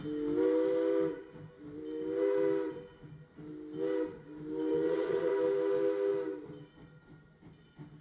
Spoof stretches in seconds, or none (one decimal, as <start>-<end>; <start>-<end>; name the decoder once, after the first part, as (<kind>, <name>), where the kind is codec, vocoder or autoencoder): 4.7-5.3 (vocoder, WaveNeXt)